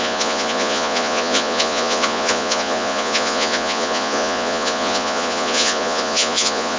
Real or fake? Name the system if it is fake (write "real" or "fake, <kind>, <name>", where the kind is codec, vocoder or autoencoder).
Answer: fake, vocoder, Vocos